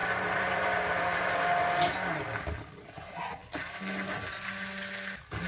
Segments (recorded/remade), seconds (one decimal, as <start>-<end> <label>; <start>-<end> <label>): 0.0-1.2 remade; 1.2-5.5 recorded

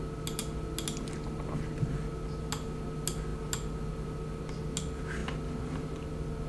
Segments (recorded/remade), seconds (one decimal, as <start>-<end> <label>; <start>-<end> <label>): 0.0-6.5 recorded

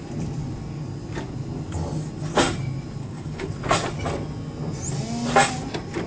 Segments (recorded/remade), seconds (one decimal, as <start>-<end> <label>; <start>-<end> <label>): 0.0-3.0 recorded; 3.0-3.5 remade; 3.5-6.1 recorded